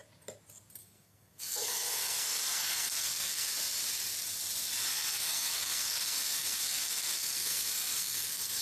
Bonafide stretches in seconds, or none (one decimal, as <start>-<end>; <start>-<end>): 0.0-0.8; 3.5-4.9